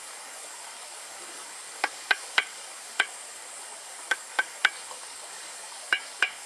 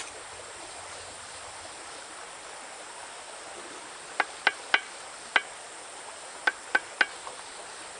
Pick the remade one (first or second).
first